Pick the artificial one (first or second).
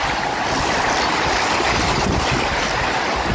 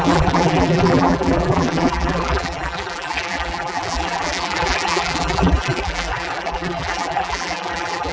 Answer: second